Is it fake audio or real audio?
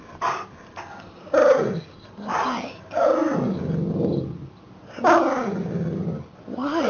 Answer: real